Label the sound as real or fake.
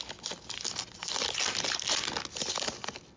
real